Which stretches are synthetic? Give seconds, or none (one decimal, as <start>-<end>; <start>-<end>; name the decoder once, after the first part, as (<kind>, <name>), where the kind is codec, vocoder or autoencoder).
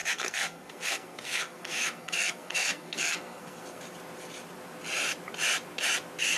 0.0-3.8 (codec, SNAC)